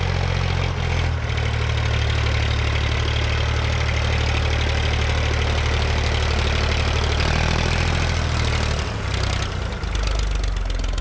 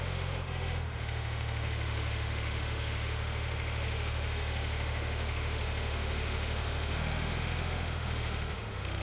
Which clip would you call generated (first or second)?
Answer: second